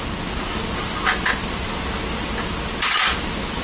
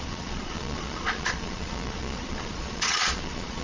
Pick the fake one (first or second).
second